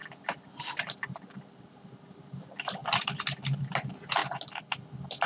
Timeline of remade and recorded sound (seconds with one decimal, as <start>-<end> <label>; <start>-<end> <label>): 0.0-5.3 recorded